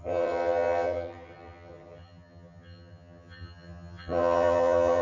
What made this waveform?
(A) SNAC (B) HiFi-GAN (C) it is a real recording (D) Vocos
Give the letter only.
B